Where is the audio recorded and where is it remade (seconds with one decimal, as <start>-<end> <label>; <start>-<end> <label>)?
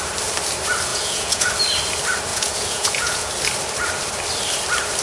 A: 0.0-0.9 recorded; 0.9-1.5 remade; 1.5-2.3 recorded; 2.3-3.3 remade; 3.3-5.0 recorded